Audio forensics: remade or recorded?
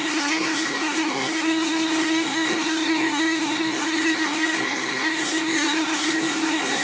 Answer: remade